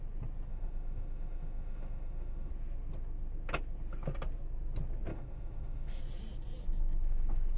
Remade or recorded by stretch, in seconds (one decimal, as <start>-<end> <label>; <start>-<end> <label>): 0.0-0.5 recorded; 0.5-2.5 remade; 2.5-5.1 recorded; 5.1-6.0 remade; 6.0-7.6 recorded